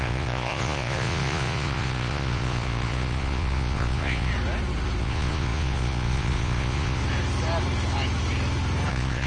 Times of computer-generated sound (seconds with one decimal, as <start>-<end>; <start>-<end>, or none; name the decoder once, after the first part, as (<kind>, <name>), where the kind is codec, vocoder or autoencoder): 0.0-4.3 (vocoder, Vocos); 5.0-7.0; 8.9-9.3